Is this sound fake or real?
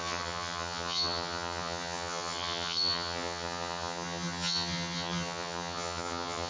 fake